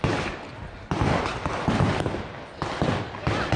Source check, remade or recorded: recorded